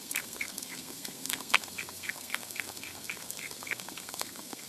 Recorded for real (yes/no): no